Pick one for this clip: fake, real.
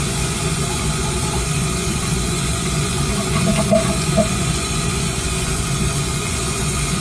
fake